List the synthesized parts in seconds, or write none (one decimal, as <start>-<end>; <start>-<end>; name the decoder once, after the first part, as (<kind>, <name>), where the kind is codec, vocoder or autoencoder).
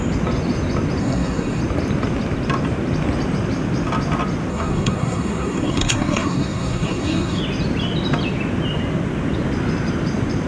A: 1.0-1.6 (codec, SNAC); 4.5-7.4